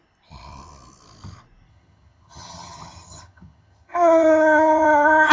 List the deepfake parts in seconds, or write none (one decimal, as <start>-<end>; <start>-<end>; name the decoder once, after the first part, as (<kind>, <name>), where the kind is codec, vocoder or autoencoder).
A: 1.7-5.3 (vocoder, HiFi-GAN)